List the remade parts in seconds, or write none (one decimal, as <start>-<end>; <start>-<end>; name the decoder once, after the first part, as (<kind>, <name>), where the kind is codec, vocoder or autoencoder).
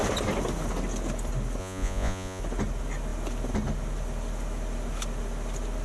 1.6-2.4 (vocoder, Vocos)